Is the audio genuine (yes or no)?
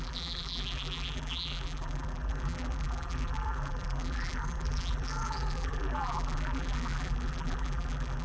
no